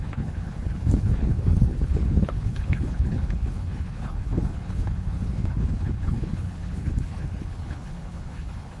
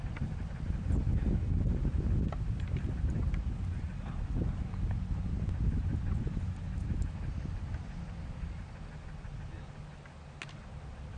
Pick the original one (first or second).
second